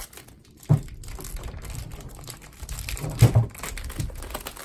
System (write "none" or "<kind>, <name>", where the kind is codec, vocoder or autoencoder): none